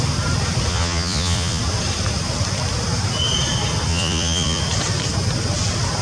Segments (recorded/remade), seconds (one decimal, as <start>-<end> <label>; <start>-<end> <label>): 0.0-0.7 recorded; 0.7-1.6 remade; 1.6-3.9 recorded; 3.9-4.6 remade; 4.6-6.0 recorded